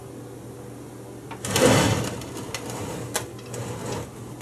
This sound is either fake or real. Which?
real